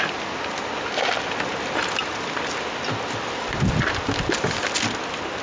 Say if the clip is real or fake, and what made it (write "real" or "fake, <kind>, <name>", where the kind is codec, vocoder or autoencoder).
real